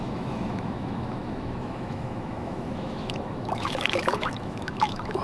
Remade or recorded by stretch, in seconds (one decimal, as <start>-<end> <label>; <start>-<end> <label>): 0.0-5.2 remade